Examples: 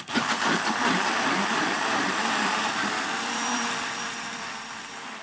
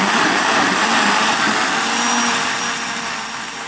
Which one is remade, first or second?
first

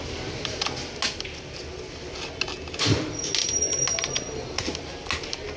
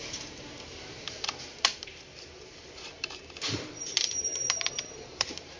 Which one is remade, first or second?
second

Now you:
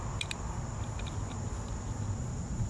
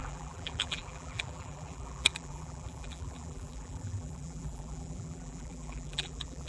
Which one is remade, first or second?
second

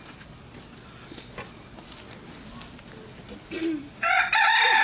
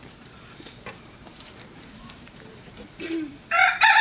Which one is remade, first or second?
second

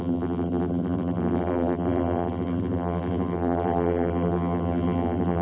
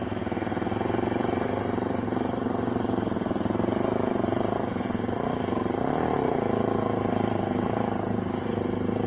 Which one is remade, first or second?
first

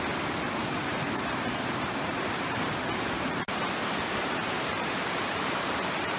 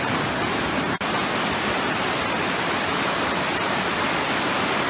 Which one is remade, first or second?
first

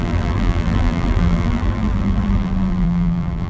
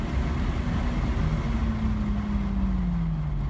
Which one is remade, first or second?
first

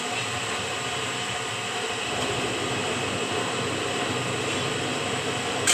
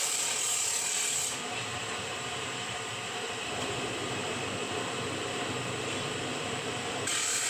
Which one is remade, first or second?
second